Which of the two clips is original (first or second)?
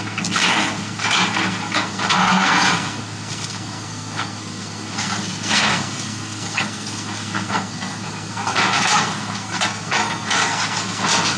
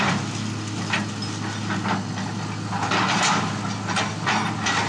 second